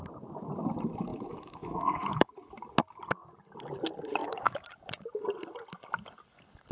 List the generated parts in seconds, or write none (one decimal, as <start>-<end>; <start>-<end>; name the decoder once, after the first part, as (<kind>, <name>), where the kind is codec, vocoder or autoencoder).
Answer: 1.1-2.3 (autoencoder, DAC-VAE); 4.2-4.7